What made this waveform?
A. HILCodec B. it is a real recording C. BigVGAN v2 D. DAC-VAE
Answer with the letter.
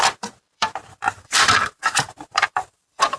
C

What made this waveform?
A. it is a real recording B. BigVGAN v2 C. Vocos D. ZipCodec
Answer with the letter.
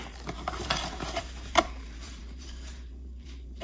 B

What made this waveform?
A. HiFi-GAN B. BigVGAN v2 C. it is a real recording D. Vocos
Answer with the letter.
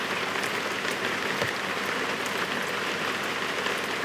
C